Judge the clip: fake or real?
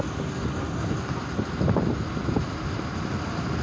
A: real